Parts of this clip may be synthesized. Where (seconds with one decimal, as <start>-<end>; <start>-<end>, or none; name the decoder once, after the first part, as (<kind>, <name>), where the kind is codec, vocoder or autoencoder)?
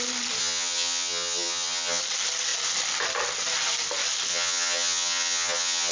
0.4-2.0 (vocoder, HiFi-GAN); 4.3-5.9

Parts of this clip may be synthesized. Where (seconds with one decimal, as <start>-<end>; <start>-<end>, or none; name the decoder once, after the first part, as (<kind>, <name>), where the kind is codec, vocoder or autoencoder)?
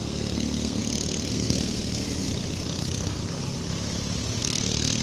0.0-0.8 (codec, SNAC); 1.3-2.3; 2.8-3.2; 4.4-5.0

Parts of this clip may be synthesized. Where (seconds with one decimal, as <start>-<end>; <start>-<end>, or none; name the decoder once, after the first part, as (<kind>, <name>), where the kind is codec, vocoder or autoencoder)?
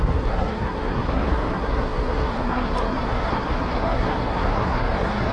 0.0-5.3 (codec, SNAC)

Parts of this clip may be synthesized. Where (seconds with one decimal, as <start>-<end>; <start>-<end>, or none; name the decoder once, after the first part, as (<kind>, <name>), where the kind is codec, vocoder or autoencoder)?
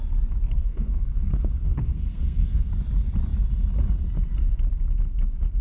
0.6-2.7 (codec, SNAC)